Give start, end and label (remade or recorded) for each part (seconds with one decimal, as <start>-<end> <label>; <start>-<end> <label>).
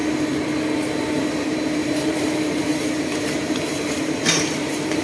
0.0-1.4 recorded; 1.4-5.0 remade